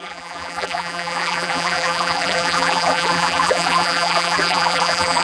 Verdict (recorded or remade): remade